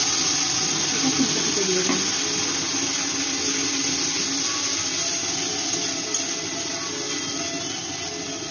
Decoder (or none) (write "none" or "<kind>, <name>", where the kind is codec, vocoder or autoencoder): none